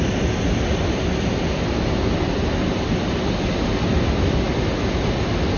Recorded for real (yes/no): yes